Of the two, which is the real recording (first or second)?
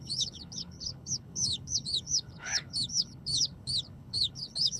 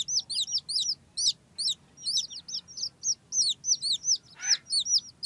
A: second